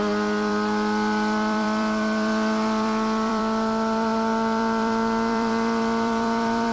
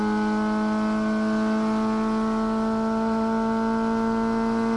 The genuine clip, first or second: second